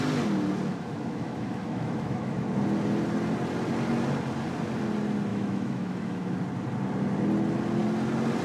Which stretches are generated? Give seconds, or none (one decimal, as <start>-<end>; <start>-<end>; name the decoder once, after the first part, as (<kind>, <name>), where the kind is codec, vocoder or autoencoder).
0.7-2.4 (autoencoder, DAC-VAE); 5.3-6.4